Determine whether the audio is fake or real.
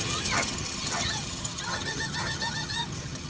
fake